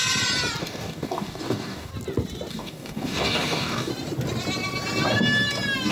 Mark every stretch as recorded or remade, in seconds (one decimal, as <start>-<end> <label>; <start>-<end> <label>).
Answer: 0.0-0.6 recorded; 0.6-1.9 remade; 1.9-2.5 recorded; 2.5-3.9 remade; 3.9-5.9 recorded

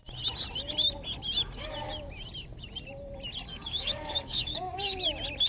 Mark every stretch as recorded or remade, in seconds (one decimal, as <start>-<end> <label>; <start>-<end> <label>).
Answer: 0.0-3.5 recorded; 3.5-5.0 remade; 5.0-5.5 recorded